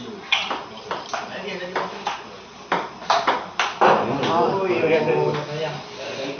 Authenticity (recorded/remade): recorded